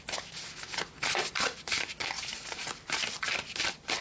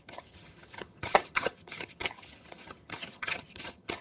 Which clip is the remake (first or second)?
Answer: second